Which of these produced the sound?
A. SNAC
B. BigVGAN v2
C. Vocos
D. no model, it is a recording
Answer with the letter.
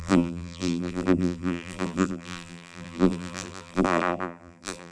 B